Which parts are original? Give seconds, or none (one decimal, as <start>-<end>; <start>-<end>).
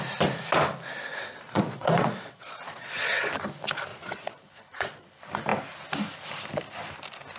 0.0-1.1; 3.3-3.9; 5.1-7.4